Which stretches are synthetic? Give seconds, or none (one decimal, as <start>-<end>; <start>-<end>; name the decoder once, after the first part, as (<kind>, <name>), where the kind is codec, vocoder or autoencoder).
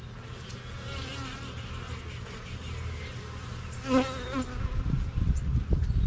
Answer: none